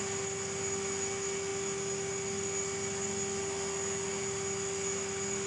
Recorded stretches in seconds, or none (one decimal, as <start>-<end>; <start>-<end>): 0.0-5.5